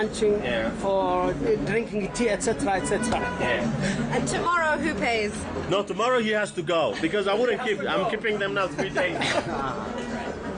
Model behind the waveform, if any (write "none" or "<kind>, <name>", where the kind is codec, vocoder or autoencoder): none